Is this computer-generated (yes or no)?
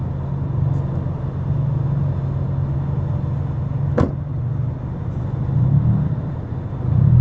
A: no